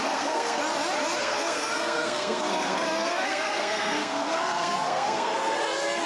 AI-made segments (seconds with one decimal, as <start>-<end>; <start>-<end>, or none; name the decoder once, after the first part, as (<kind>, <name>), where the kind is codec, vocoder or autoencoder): 0.0-0.6 (codec, SNAC); 1.2-5.6